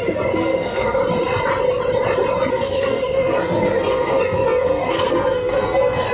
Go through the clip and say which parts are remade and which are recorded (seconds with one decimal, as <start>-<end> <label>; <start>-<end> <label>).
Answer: 0.0-1.0 remade; 1.0-2.5 recorded; 2.5-6.1 remade